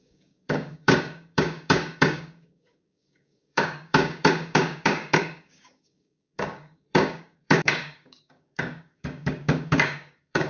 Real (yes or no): no